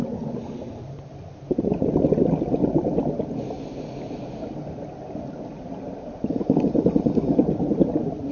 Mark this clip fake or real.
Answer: real